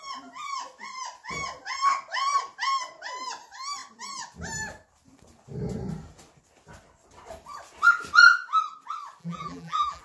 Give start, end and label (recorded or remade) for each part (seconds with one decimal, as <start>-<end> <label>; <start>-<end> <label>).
0.0-9.2 recorded; 9.2-10.0 remade